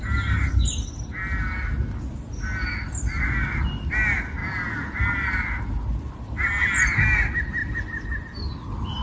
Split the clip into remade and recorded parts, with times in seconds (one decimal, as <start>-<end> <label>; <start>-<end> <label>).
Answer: 0.0-4.4 recorded; 4.4-5.0 remade; 5.0-7.6 recorded; 7.6-8.3 remade; 8.3-9.0 recorded